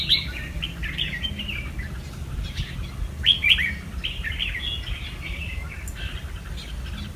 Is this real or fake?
real